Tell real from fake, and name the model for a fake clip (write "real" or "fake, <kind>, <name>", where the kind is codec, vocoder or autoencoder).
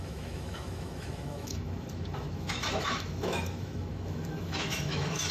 fake, autoencoder, DAC-VAE